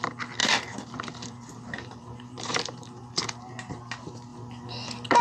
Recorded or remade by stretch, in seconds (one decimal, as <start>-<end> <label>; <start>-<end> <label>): 0.0-0.4 recorded; 0.4-3.5 remade; 3.5-5.2 recorded

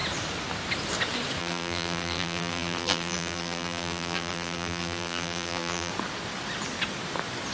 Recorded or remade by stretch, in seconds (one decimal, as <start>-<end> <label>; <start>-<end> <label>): 0.0-1.4 recorded; 1.4-5.9 remade; 5.9-7.5 recorded

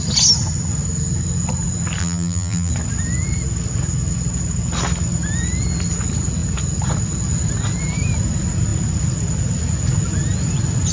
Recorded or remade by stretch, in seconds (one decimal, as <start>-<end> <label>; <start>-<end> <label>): 0.0-2.0 recorded; 2.0-2.7 remade; 2.7-10.9 recorded